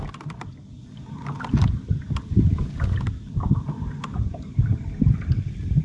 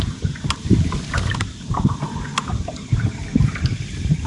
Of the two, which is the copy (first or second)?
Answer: second